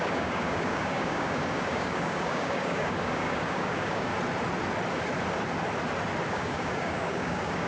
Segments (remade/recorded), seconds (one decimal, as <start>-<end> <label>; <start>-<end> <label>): 0.0-4.1 remade; 4.1-6.3 recorded; 6.3-7.7 remade